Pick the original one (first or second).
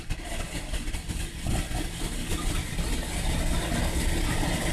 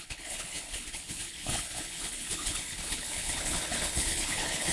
first